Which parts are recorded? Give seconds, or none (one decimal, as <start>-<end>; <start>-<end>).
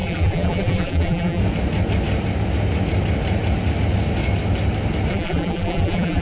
1.4-5.1